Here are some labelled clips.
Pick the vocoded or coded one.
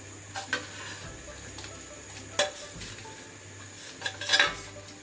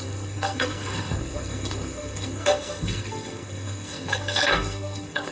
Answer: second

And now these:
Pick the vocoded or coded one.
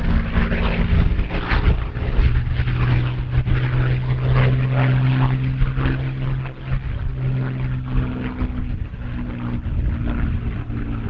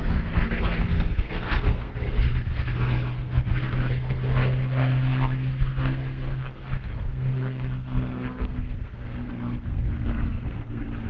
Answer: second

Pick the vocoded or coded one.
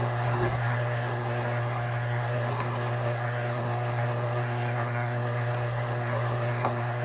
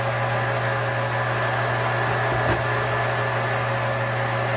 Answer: first